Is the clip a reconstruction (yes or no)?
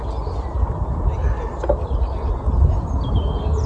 no